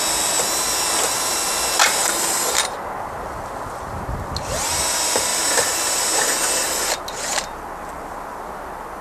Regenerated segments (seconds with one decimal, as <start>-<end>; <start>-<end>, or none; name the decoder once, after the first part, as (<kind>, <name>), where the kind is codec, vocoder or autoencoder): none